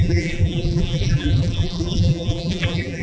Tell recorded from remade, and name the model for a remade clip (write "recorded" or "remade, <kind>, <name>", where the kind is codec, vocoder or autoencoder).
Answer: remade, vocoder, BigVGAN v2